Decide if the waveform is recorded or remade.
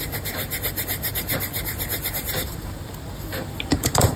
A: remade